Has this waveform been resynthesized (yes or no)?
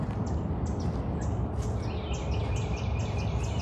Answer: no